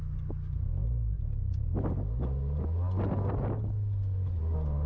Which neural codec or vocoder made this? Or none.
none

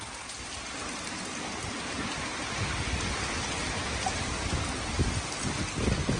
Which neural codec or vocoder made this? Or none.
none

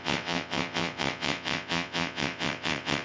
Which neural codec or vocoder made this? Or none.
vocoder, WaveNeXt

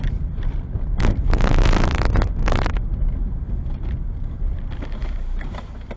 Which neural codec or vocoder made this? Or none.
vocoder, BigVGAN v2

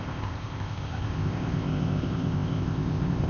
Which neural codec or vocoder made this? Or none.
codec, ZipCodec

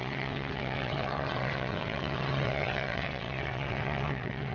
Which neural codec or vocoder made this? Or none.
vocoder, WaveNeXt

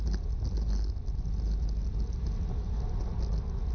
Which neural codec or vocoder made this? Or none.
none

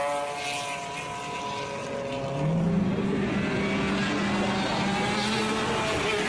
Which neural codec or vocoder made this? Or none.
none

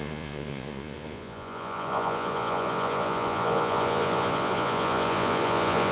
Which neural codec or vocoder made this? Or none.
vocoder, Vocos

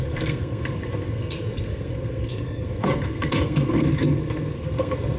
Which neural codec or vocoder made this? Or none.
codec, SNAC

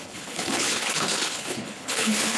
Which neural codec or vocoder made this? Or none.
codec, HILCodec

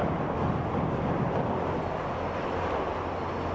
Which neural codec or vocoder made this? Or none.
none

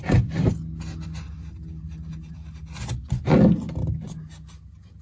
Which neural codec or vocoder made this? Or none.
none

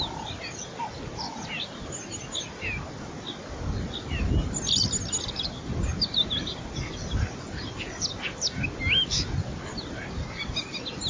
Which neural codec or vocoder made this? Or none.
none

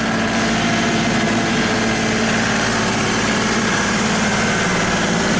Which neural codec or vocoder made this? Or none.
none